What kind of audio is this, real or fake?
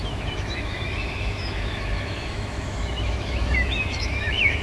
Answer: fake